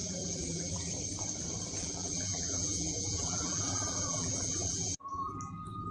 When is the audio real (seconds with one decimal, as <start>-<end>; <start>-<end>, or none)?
0.9-1.8; 5.3-5.9